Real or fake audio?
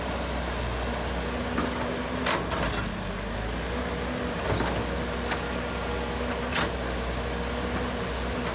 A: real